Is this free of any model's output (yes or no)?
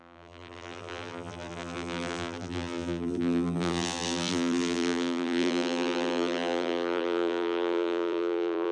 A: no